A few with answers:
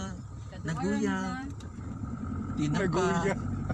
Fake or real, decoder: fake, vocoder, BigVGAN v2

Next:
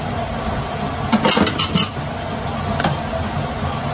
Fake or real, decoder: real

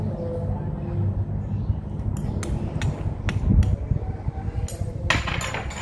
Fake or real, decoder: real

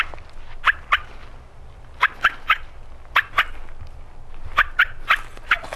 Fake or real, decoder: real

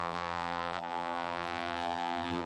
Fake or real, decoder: fake, vocoder, BigVGAN v2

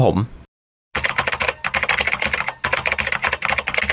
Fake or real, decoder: real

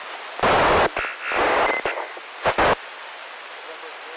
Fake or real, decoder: real